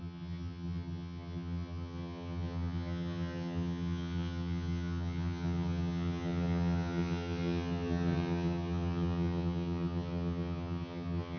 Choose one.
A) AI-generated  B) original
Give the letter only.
A